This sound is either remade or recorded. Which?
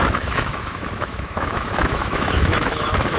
remade